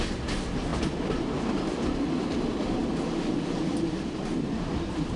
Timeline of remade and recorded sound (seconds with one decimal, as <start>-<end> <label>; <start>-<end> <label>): 0.0-5.2 recorded